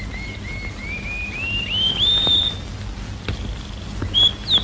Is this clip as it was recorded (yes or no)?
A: yes